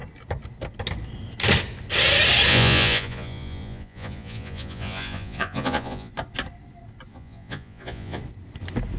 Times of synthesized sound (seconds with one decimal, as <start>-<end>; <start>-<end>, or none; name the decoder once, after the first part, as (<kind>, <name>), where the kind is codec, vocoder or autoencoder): 2.5-6.1 (vocoder, Vocos); 7.1-8.2